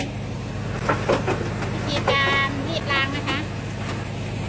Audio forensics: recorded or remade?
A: recorded